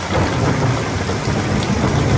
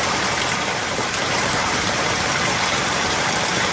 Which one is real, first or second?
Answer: first